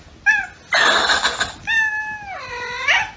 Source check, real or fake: real